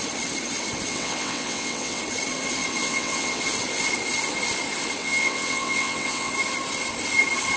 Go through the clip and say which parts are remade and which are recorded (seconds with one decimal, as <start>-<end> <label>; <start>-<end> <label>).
0.0-0.9 recorded; 0.9-2.0 remade; 2.0-2.8 recorded; 2.8-3.4 remade; 3.4-5.0 recorded; 5.0-6.3 remade; 6.3-7.6 recorded